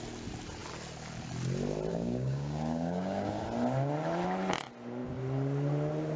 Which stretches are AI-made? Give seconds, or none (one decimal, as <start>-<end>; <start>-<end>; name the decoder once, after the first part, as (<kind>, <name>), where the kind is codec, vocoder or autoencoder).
1.9-3.4 (codec, DAC)

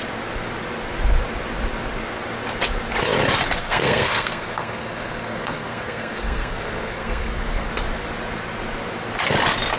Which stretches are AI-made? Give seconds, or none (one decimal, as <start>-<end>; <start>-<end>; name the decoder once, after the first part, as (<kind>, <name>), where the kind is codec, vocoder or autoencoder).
3.6-7.7 (codec, SNAC)

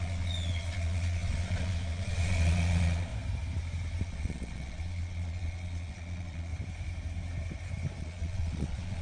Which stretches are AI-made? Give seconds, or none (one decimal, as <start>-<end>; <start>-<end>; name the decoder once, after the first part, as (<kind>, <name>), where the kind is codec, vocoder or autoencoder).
0.0-3.1 (vocoder, Vocos); 4.0-6.5; 8.0-9.0

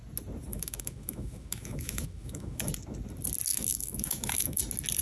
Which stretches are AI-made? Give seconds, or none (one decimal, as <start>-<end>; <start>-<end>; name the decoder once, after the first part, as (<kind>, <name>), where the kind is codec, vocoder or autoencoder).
0.5-2.7 (autoencoder, DAC-VAE); 3.5-4.6

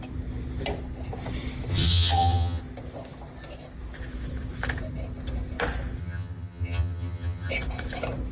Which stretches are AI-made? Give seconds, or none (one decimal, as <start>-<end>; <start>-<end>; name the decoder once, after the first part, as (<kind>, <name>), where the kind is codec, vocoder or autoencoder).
1.7-2.6 (vocoder, HiFi-GAN); 6.0-7.5

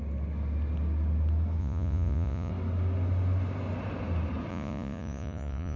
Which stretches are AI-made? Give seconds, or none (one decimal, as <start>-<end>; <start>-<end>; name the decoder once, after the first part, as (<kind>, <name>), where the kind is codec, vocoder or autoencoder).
1.6-2.5 (vocoder, Vocos); 4.5-5.8

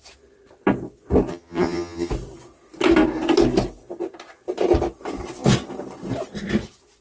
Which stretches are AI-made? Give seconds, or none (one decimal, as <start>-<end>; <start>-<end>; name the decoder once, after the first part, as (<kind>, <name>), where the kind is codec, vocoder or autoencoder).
1.3-2.1 (vocoder, HiFi-GAN)

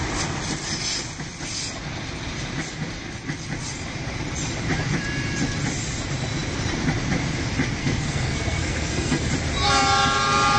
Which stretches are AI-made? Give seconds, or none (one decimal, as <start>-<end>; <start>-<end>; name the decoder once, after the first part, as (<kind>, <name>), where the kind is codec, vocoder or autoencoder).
7.8-9.3 (codec, SNAC)